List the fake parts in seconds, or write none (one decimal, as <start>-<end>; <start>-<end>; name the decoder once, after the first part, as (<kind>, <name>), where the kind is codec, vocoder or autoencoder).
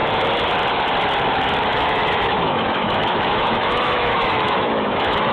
1.7-5.3 (autoencoder, DAC-VAE)